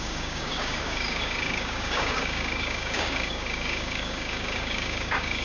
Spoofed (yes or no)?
yes